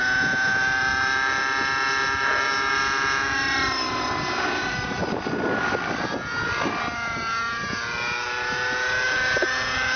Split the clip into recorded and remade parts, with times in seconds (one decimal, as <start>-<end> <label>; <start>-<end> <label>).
0.0-10.0 recorded